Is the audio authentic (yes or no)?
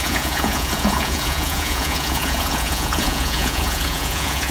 no